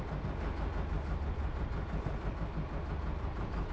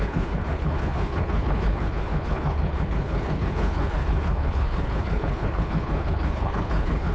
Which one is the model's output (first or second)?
second